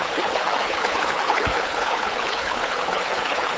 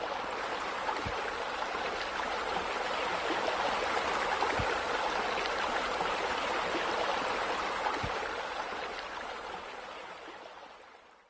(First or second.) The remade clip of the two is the first